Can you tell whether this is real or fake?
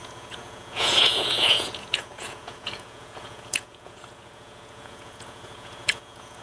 fake